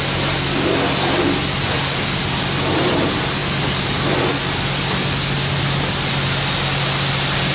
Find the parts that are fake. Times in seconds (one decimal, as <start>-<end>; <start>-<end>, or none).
none